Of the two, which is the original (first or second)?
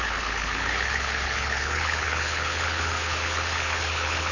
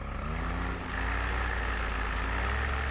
second